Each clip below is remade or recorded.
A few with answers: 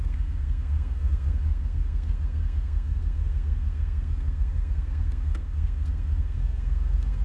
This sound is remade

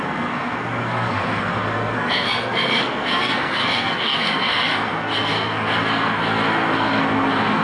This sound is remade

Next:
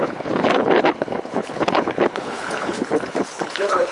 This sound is remade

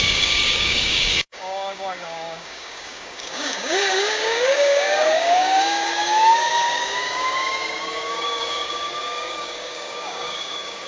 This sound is remade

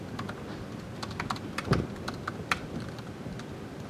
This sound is recorded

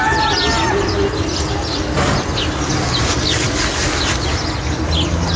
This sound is recorded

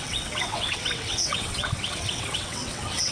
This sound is remade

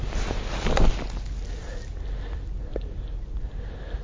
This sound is recorded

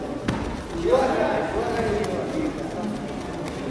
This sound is recorded